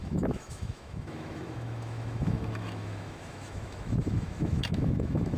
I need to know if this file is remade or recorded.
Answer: remade